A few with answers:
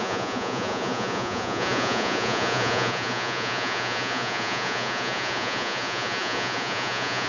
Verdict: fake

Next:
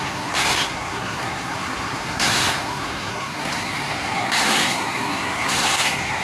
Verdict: fake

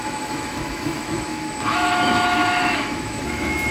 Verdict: fake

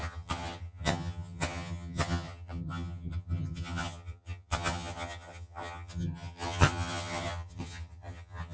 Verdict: fake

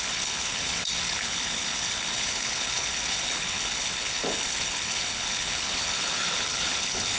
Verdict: fake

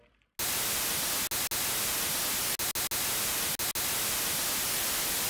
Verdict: real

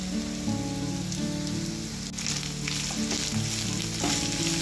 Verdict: real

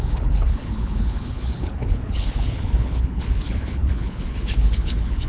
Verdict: fake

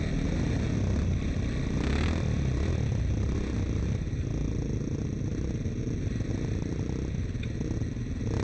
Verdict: real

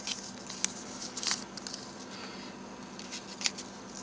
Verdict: real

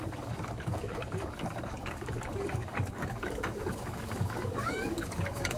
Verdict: fake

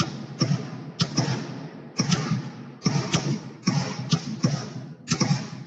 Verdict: real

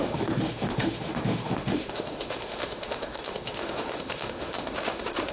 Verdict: fake